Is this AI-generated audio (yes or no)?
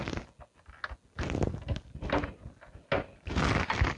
no